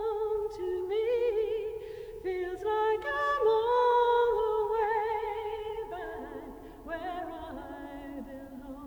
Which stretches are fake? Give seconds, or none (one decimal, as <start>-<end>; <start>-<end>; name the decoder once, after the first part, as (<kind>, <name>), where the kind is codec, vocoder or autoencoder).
0.0-1.2 (autoencoder, DAC-VAE); 1.8-6.2